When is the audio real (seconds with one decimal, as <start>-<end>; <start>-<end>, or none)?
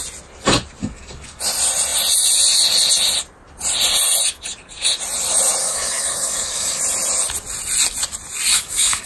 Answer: 0.0-0.8; 1.4-5.6; 6.8-8.5